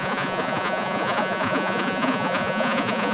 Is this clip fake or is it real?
fake